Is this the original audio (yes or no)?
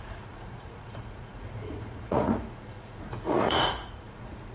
no